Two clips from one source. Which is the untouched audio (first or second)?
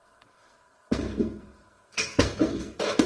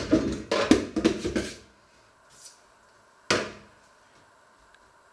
second